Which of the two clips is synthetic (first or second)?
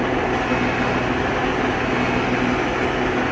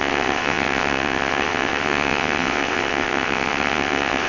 second